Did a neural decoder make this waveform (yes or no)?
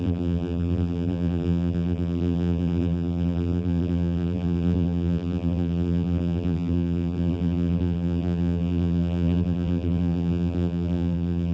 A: yes